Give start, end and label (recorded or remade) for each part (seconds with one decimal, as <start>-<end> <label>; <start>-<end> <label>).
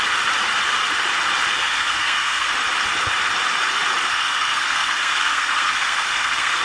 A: 0.0-1.6 recorded; 1.6-2.5 remade; 2.5-4.1 recorded; 4.1-6.6 remade